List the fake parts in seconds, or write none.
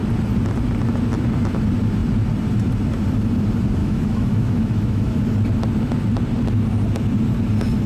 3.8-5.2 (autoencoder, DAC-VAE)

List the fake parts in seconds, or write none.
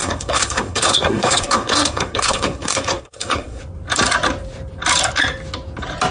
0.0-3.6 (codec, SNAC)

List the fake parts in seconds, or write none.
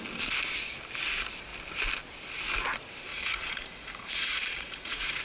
3.1-5.2 (vocoder, Vocos)